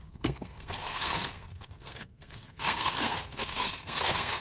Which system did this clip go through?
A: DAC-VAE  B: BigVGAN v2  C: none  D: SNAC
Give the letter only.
D